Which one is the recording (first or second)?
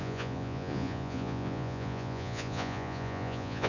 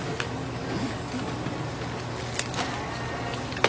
second